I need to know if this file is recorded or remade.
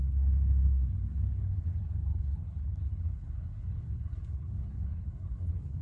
remade